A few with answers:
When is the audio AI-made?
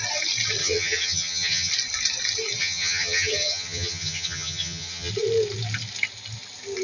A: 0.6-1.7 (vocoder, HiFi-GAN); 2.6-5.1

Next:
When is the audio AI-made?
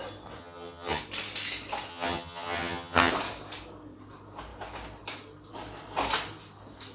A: 0.4-1.0 (vocoder, HiFi-GAN); 1.9-3.1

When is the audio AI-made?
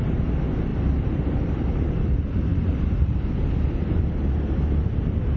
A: 0.7-1.8 (vocoder, BigVGAN v2); 2.5-3.1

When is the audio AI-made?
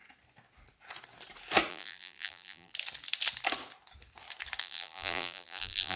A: 1.7-2.7 (vocoder, BigVGAN v2); 4.6-6.0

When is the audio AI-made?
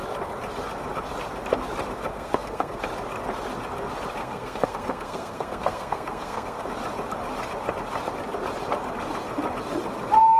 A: 2.1-2.8 (codec, SNAC); 4.2-6.7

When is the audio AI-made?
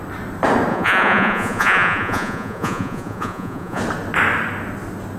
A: 0.7-3.8 (vocoder, Vocos)